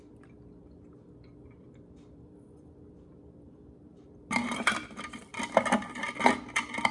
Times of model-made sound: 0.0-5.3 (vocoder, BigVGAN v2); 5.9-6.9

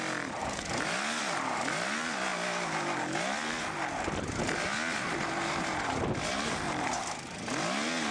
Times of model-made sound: 0.4-1.2 (codec, DAC)

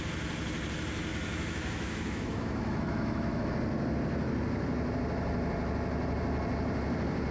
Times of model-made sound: 1.1-3.5 (autoencoder, DAC-VAE)

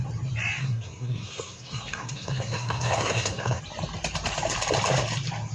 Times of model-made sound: 0.6-3.6 (codec, SNAC)

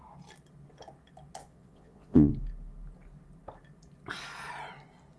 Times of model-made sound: 1.4-2.3 (vocoder, Vocos)

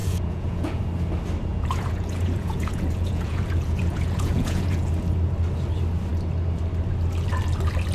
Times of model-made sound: 0.0-0.8 (vocoder, Vocos); 1.5-4.9

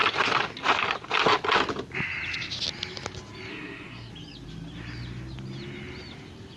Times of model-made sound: 3.5-4.1 (codec, SNAC)

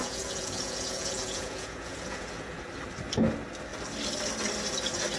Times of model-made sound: 0.0-2.6 (vocoder, Vocos)